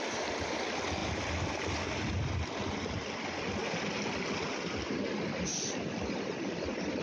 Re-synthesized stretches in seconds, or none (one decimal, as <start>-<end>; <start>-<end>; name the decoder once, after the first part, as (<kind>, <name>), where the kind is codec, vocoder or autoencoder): none